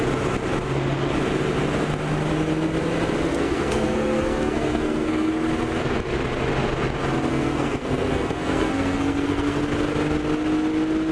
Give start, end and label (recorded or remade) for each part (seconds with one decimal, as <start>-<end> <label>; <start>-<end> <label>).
0.0-3.3 recorded; 3.3-5.3 remade; 5.3-7.3 recorded; 7.3-9.6 remade; 9.6-11.1 recorded